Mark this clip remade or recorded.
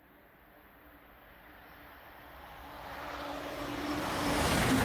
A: recorded